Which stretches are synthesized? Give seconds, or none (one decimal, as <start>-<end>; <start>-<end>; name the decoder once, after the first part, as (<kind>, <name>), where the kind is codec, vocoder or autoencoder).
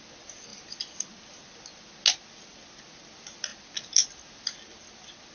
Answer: none